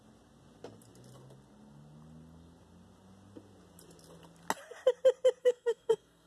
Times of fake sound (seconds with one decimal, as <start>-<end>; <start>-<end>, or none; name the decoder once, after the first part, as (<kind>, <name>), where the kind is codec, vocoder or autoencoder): 5.4-6.3 (codec, SNAC)